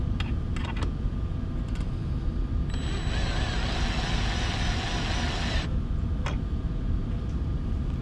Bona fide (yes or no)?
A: yes